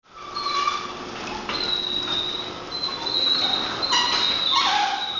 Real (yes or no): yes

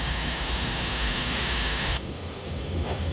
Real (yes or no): no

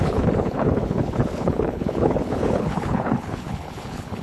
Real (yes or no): no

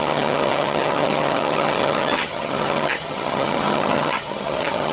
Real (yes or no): no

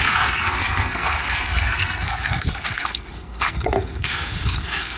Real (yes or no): no